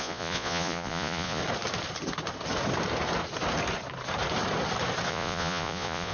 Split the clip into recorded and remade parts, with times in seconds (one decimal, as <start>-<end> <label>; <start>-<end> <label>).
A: 0.0-1.4 remade; 1.4-5.1 recorded; 5.1-6.1 remade